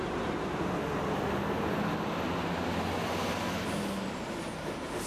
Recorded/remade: recorded